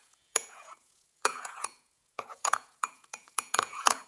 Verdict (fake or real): fake